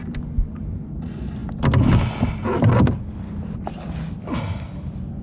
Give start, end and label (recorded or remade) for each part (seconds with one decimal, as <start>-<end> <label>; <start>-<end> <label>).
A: 0.0-5.2 recorded